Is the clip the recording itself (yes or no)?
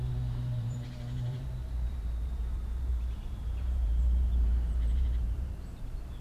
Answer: no